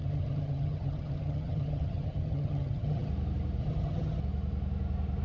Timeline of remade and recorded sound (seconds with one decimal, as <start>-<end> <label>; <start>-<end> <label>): 0.0-3.1 remade; 3.1-3.6 recorded; 3.6-4.2 remade; 4.2-5.2 recorded